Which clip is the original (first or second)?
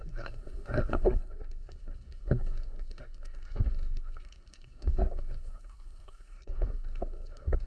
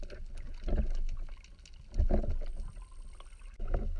second